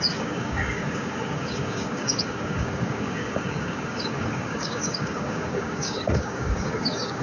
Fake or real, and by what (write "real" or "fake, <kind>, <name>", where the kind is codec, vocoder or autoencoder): fake, codec, DAC